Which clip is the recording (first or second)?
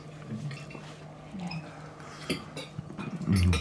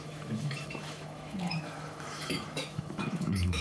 first